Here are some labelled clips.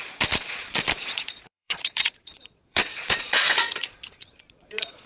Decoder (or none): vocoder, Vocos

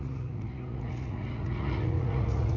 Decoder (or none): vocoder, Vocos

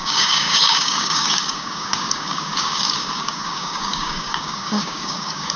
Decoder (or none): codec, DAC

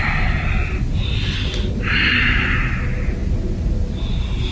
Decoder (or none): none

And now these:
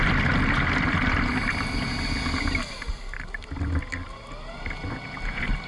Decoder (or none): none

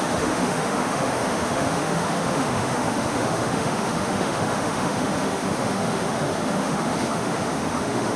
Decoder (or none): autoencoder, DAC-VAE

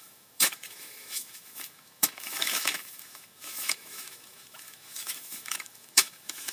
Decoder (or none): autoencoder, DAC-VAE